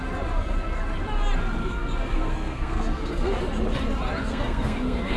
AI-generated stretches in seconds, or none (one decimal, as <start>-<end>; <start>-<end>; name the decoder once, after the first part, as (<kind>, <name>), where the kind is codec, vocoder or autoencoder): 1.6-3.4 (codec, SNAC); 4.3-5.2